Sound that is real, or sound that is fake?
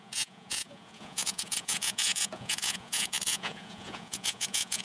fake